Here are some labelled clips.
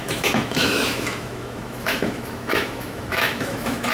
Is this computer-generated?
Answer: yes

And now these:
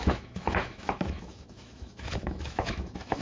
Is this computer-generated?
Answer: yes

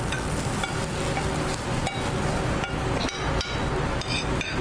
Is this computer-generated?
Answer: no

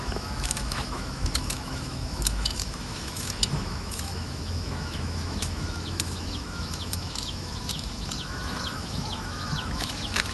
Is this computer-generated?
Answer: yes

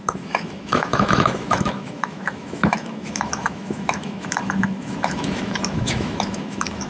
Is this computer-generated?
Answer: yes